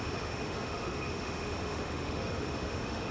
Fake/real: fake